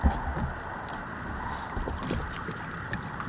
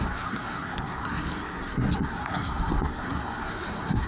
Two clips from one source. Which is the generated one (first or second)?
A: second